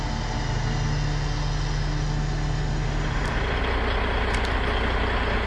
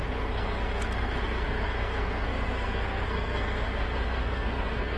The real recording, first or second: first